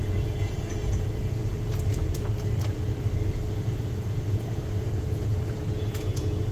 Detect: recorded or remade remade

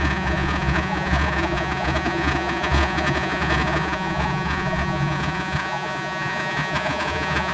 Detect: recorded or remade remade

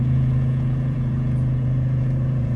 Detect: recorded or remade remade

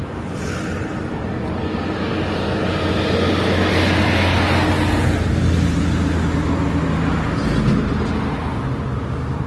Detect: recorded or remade recorded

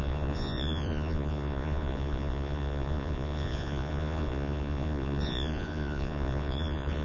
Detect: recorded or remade remade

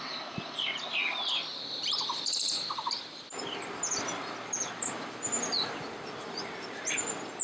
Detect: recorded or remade recorded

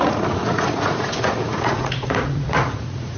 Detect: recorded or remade remade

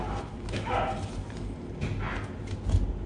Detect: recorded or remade recorded